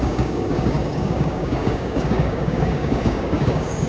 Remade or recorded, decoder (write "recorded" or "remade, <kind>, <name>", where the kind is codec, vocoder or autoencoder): remade, codec, DAC